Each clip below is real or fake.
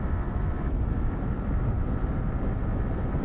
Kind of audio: real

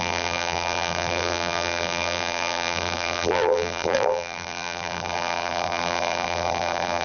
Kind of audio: fake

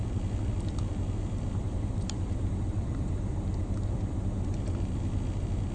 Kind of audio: fake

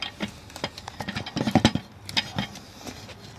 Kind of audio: real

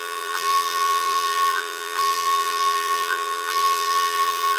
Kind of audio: fake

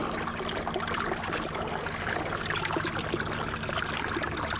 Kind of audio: real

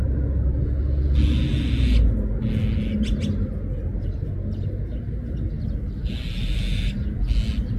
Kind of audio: real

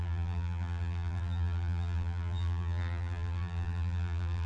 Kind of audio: fake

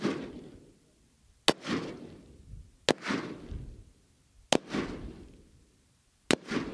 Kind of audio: real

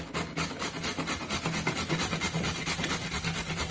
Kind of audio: real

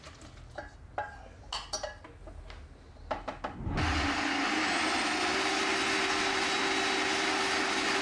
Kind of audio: real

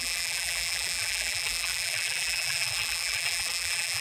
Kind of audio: fake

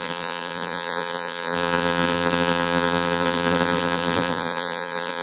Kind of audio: fake